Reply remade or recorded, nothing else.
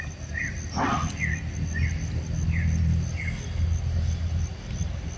recorded